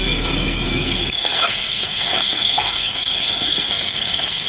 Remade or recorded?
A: remade